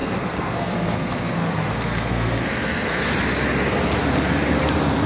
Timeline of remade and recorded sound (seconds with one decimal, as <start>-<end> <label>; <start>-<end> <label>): 0.0-3.1 remade; 3.1-5.1 recorded